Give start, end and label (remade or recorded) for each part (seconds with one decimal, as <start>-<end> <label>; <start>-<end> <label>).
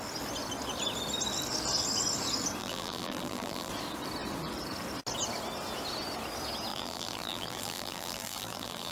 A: 0.0-2.6 recorded; 2.6-3.7 remade; 3.7-6.7 recorded; 6.7-8.9 remade